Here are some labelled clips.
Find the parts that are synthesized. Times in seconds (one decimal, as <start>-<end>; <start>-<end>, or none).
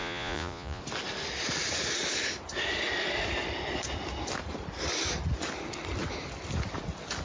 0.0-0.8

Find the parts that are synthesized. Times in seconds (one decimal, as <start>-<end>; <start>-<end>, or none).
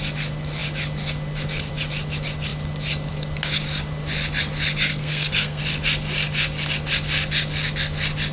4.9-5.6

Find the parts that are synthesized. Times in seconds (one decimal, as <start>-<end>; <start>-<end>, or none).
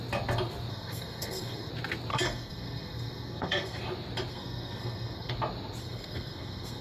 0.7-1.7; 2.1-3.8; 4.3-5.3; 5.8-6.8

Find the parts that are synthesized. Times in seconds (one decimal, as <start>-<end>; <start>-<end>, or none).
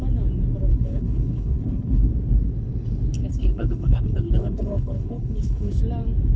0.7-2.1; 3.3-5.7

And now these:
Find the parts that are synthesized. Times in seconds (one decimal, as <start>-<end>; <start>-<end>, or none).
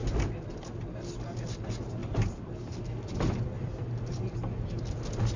0.0-0.5; 2.0-4.5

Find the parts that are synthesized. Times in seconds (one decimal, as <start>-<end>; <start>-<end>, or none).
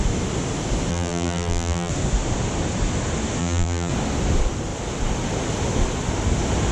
0.9-1.9; 3.4-3.9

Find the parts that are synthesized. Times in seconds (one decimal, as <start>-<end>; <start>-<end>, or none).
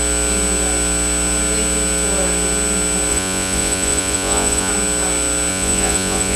3.1-4.7; 5.5-6.4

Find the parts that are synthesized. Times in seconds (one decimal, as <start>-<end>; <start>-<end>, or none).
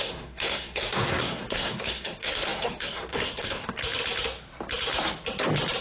0.0-3.8